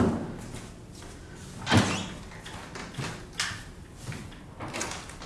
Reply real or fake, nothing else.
real